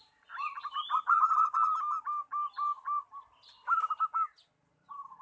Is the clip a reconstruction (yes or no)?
no